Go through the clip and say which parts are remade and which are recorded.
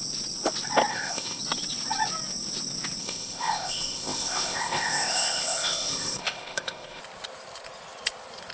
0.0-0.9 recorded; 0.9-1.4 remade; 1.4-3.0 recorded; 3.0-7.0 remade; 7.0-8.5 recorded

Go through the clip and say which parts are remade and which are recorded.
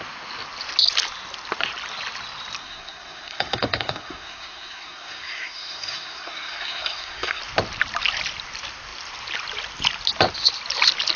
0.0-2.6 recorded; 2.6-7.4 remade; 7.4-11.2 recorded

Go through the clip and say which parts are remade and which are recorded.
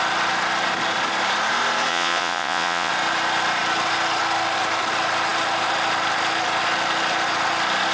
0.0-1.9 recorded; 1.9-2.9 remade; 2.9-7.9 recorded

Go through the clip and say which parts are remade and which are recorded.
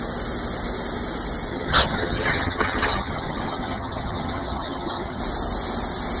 0.0-1.5 recorded; 1.5-5.2 remade; 5.2-6.2 recorded